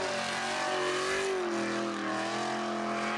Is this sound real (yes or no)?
yes